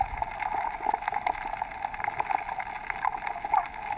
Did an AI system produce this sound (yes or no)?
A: no